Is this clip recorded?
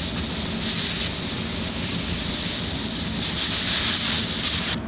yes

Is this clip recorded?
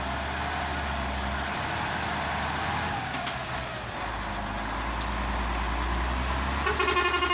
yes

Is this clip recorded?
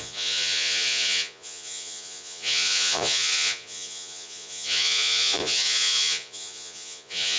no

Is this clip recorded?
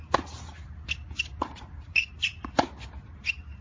yes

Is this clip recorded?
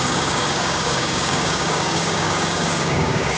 no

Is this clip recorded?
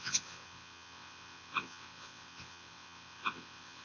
no